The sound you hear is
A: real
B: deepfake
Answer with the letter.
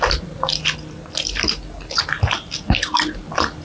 A